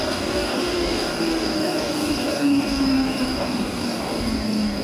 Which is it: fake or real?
fake